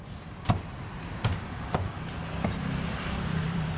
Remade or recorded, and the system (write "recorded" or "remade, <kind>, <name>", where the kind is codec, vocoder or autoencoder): remade, vocoder, BigVGAN v2